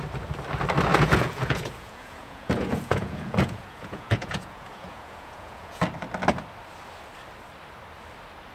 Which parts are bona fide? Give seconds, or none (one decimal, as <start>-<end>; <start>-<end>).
0.0-0.9; 5.8-8.5